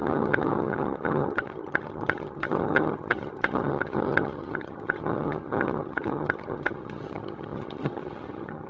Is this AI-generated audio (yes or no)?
yes